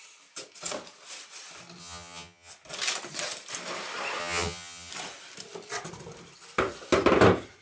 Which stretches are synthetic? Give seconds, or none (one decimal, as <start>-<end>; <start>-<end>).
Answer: 1.8-2.5; 4.2-4.9